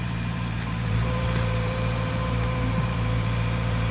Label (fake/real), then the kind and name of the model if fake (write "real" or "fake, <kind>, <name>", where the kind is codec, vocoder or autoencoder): fake, vocoder, BigVGAN v2